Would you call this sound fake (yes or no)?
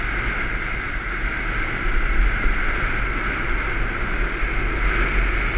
no